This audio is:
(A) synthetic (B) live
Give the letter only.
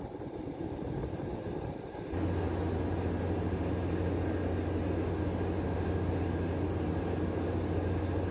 B